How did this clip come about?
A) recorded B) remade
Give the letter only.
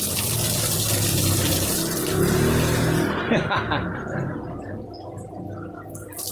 A